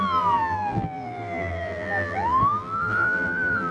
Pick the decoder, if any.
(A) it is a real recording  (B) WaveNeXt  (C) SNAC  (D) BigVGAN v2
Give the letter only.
D